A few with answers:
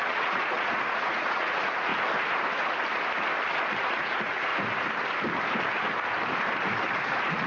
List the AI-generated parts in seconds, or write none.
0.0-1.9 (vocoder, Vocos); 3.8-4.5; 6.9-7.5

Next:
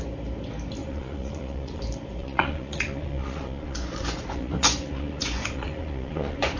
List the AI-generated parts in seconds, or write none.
0.8-1.8 (vocoder, Vocos); 2.2-6.6